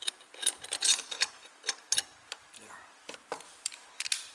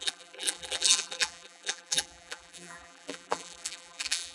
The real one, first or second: first